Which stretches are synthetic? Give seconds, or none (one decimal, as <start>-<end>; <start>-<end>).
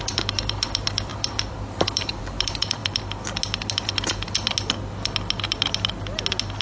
0.0-2.8